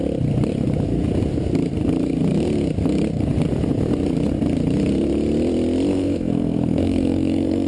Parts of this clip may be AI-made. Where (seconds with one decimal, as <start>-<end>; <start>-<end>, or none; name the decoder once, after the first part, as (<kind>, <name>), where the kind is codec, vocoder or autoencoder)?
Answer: 5.9-7.7 (codec, SNAC)